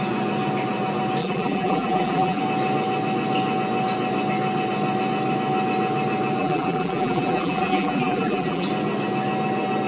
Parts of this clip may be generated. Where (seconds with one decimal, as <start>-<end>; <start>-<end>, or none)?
1.2-2.4; 6.4-8.7